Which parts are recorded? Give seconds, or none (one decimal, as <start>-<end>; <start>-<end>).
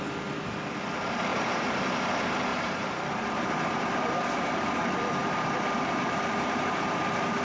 0.0-1.3; 2.1-2.5; 4.7-5.2